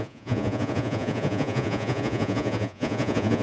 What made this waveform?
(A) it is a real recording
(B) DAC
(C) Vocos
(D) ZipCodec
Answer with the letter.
C